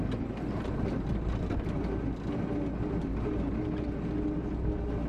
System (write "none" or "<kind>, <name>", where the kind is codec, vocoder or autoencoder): none